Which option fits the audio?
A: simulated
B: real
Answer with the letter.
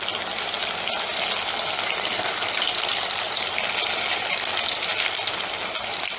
B